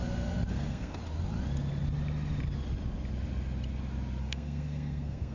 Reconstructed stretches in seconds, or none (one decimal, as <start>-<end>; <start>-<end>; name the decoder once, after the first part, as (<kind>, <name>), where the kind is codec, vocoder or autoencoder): 0.5-1.0 (codec, SNAC); 4.2-5.3